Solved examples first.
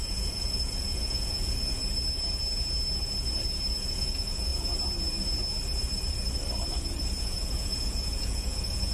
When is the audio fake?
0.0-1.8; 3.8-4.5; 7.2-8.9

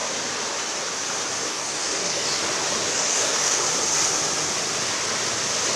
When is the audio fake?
1.5-2.4; 2.9-3.6

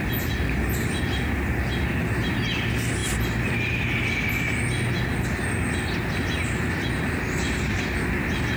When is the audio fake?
none